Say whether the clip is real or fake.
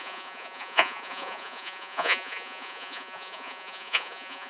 fake